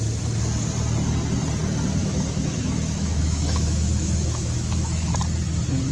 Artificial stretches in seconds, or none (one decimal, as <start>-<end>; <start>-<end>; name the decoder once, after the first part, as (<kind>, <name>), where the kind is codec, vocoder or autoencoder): 2.0-5.1 (autoencoder, DAC-VAE)